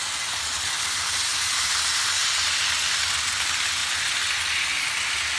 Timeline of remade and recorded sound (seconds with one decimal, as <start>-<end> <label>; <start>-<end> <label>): 0.0-5.4 recorded